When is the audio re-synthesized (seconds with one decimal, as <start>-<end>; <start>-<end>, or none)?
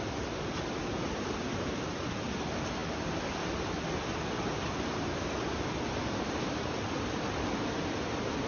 none